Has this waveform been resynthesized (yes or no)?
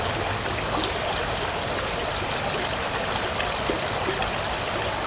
no